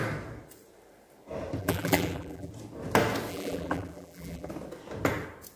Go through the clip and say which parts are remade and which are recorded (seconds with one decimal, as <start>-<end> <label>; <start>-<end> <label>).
0.0-1.6 recorded; 1.6-2.5 remade; 2.5-3.3 recorded; 3.3-4.5 remade; 4.5-5.6 recorded